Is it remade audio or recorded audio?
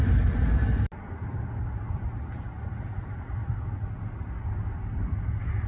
recorded